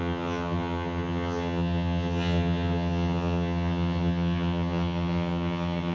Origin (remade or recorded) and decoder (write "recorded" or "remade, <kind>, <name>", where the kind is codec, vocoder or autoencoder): remade, vocoder, HiFi-GAN